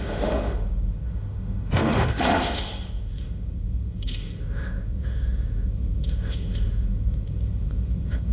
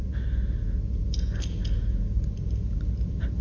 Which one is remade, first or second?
first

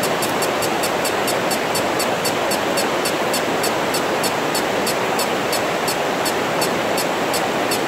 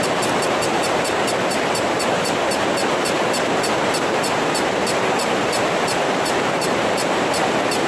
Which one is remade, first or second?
second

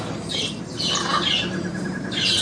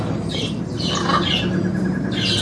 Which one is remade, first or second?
first